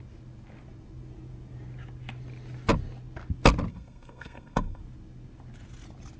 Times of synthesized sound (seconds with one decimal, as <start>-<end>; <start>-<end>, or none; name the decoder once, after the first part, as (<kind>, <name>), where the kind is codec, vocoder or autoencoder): 3.7-4.8 (codec, SNAC)